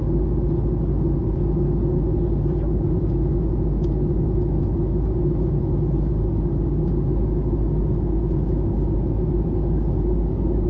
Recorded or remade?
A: recorded